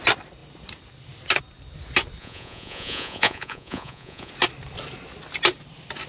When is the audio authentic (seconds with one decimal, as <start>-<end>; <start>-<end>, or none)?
0.0-2.2; 4.3-6.1